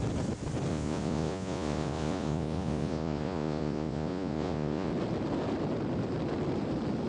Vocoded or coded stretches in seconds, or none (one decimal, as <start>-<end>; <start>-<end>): 0.7-4.9